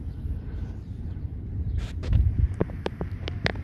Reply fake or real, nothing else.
fake